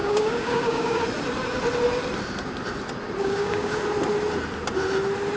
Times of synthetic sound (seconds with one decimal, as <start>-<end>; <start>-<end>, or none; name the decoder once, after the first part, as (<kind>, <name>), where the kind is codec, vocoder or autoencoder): 0.0-1.0 (codec, DAC); 3.2-3.8